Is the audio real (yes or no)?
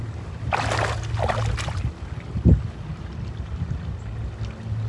yes